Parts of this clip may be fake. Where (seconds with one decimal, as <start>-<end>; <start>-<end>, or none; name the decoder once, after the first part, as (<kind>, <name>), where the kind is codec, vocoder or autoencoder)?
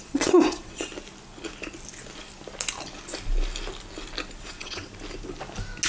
0.0-0.9 (vocoder, WaveNeXt); 4.4-4.9